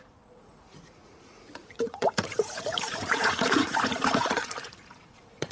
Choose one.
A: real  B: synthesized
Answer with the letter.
B